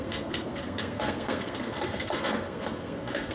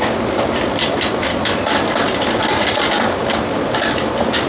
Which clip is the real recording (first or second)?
second